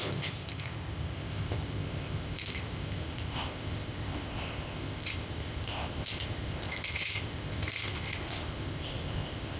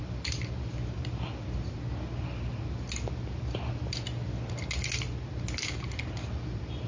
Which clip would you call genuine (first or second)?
second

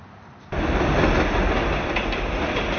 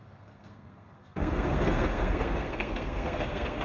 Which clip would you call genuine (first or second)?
first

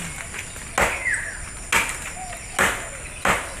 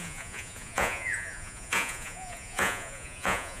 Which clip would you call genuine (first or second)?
first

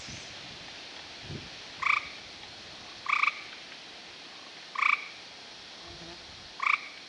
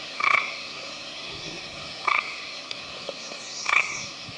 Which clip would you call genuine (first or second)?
first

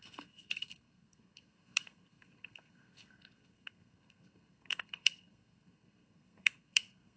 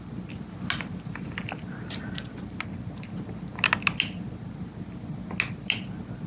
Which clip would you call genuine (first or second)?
second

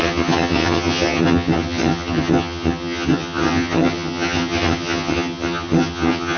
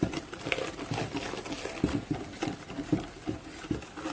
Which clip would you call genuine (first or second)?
second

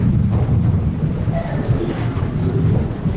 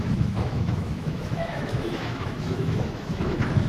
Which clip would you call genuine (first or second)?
first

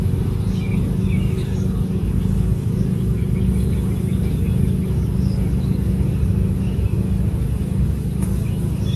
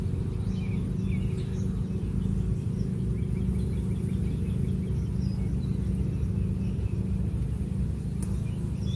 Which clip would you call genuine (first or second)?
second